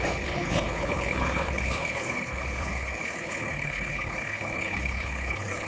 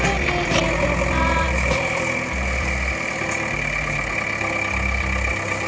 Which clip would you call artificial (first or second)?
first